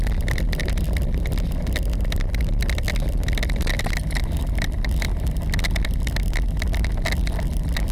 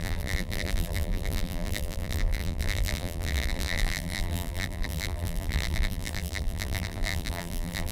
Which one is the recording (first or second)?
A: first